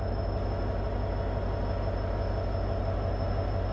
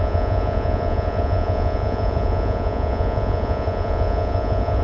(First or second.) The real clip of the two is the first